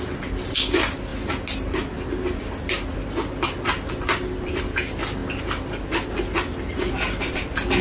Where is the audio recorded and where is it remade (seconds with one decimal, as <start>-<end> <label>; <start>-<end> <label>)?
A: 0.0-7.8 recorded